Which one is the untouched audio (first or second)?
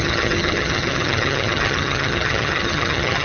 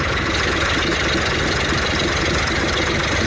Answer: second